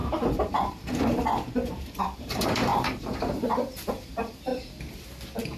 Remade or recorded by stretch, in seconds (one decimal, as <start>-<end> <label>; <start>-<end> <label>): 0.0-4.5 remade; 4.5-5.6 recorded

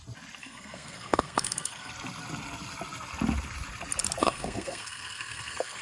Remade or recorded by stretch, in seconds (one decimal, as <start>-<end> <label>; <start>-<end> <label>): 0.0-0.4 recorded; 0.4-1.9 remade; 1.9-4.2 recorded; 4.2-5.8 remade

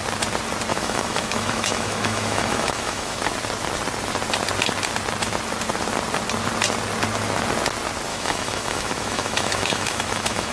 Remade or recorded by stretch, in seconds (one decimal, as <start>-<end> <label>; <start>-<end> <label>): 0.0-0.7 recorded; 0.7-3.2 remade; 3.2-8.1 recorded; 8.1-10.5 remade

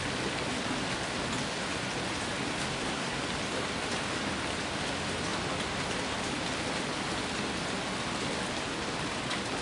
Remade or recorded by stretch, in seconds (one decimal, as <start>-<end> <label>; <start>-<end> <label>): 0.0-2.7 recorded; 2.7-3.2 remade; 3.2-9.6 recorded

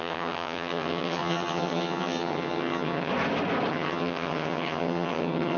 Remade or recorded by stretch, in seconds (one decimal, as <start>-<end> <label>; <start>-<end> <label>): 0.0-3.1 remade; 3.1-3.7 recorded; 3.7-5.6 remade

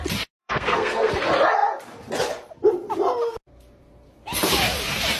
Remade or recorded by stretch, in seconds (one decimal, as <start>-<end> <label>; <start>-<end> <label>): 0.0-0.4 recorded; 0.4-1.1 remade; 1.1-5.2 recorded

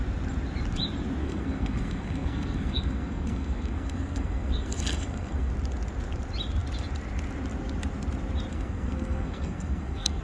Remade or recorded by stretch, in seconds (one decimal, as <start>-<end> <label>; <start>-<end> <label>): 0.0-1.2 recorded; 1.2-5.5 remade; 5.5-8.5 recorded; 8.5-10.2 remade

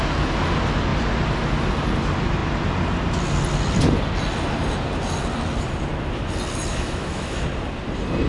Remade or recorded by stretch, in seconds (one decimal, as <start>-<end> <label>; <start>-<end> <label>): 0.0-6.7 recorded; 6.7-7.4 remade; 7.4-8.3 recorded